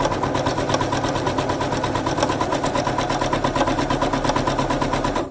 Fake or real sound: real